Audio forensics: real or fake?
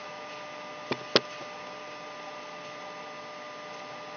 real